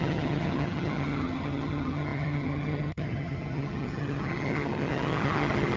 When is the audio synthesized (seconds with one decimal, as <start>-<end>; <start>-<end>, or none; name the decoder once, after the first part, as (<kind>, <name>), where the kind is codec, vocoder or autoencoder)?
0.0-5.8 (vocoder, HiFi-GAN)